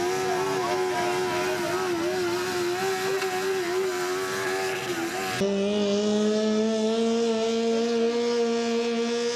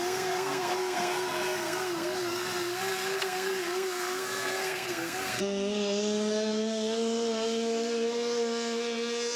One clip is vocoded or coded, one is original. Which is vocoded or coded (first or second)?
second